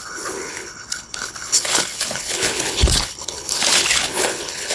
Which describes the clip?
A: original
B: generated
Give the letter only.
B